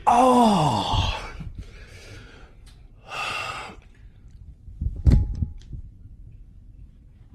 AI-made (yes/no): yes